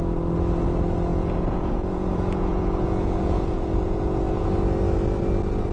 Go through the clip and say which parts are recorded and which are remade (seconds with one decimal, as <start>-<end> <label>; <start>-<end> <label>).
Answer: 0.0-1.1 recorded; 1.1-4.5 remade; 4.5-5.7 recorded